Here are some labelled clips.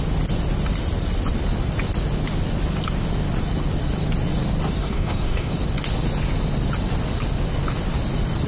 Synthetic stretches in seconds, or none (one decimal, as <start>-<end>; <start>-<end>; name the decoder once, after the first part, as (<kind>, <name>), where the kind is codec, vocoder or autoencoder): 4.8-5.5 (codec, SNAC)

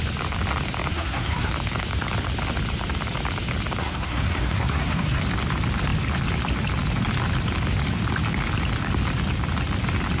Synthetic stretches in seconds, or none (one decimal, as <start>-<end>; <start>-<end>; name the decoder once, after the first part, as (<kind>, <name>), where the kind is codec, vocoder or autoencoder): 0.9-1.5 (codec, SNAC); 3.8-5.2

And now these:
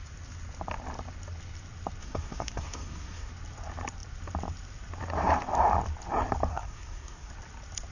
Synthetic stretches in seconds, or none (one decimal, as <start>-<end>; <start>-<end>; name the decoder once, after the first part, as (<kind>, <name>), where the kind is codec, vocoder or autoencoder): 2.0-3.3 (codec, SNAC); 6.5-7.3

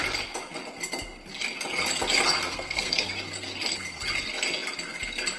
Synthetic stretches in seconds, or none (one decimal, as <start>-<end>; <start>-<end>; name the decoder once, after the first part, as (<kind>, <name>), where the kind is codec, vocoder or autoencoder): 2.4-3.1 (codec, SNAC)

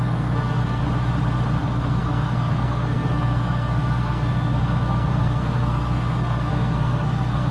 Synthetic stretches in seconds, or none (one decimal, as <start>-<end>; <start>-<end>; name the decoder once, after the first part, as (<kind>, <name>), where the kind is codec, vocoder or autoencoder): 0.0-0.8 (codec, SNAC); 1.6-7.5

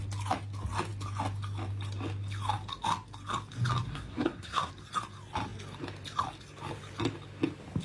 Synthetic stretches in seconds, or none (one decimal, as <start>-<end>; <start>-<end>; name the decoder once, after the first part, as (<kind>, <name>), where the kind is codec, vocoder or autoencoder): 3.9-4.7 (codec, SNAC)

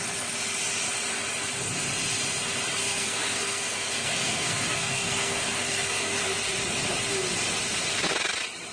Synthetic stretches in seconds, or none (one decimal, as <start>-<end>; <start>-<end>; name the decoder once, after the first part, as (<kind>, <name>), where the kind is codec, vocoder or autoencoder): 2.8-6.2 (codec, SNAC)